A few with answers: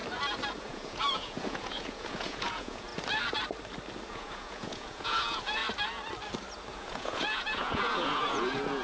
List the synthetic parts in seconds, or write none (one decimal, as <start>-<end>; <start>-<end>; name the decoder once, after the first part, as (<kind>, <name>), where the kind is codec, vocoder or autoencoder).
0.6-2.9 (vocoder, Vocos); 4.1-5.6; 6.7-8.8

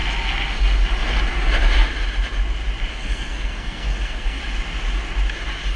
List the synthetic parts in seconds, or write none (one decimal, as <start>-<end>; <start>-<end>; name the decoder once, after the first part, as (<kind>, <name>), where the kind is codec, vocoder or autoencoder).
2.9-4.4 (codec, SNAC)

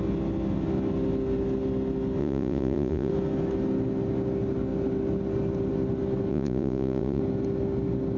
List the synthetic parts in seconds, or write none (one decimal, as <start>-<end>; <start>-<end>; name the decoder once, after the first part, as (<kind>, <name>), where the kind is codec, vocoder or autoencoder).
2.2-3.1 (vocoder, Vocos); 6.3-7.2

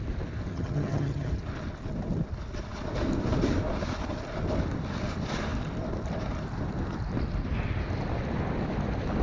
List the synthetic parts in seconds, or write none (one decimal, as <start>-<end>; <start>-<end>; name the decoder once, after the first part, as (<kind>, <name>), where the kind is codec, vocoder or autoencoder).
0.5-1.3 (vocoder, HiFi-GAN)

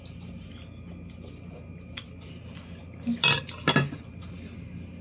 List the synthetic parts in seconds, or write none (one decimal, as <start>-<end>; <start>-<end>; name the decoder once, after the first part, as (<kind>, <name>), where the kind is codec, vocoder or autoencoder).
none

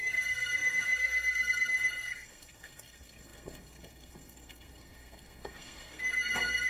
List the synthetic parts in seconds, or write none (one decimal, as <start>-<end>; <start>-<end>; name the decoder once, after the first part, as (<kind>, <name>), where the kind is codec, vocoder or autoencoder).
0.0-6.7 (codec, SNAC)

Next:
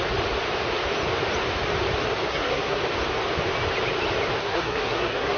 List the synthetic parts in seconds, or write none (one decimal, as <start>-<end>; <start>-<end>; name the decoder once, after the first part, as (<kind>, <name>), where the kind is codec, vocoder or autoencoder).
2.3-2.8 (codec, SNAC); 4.4-5.4

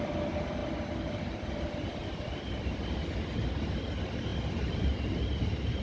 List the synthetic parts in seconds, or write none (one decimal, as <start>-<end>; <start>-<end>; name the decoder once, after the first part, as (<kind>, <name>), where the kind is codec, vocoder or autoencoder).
0.6-1.5 (vocoder, BigVGAN v2); 2.0-2.9; 4.3-5.8